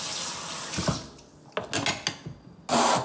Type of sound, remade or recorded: recorded